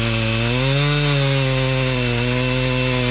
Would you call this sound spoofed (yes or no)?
no